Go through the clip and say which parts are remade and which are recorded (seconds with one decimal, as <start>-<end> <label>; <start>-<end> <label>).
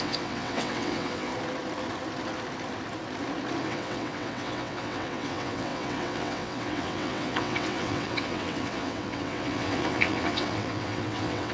0.0-1.3 remade; 1.3-3.6 recorded; 3.6-11.5 remade